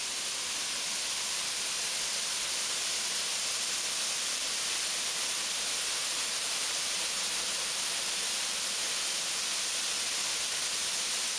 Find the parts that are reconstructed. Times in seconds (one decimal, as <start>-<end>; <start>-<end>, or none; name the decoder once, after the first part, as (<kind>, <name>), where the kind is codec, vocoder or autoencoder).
none